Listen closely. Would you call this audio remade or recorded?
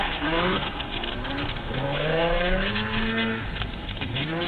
remade